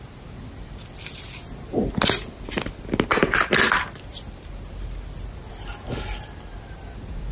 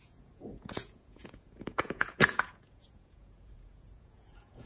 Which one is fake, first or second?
second